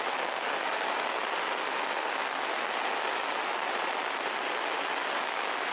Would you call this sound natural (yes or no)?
yes